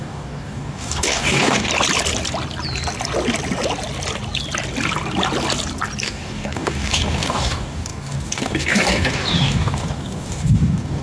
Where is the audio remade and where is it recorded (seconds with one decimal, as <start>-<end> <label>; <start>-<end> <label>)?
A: 0.0-1.7 remade; 1.7-6.0 recorded; 6.0-11.0 remade